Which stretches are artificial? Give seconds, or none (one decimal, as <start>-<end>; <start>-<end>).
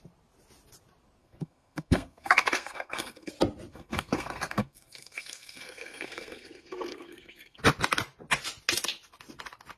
1.2-3.3; 3.7-7.6